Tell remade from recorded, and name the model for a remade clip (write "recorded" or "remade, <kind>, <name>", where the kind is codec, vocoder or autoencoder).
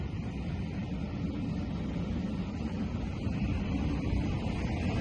recorded